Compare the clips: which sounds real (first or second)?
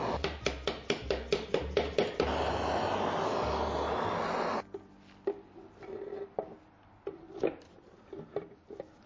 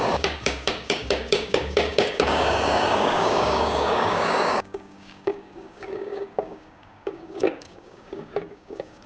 first